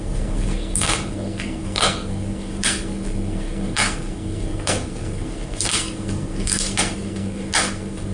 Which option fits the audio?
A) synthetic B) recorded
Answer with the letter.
A